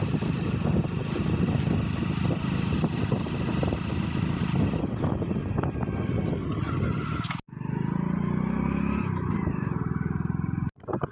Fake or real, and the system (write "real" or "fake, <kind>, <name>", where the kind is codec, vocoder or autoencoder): real